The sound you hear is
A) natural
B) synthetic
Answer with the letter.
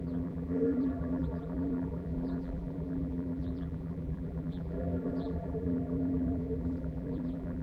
B